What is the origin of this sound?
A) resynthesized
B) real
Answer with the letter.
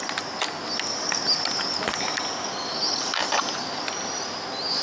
B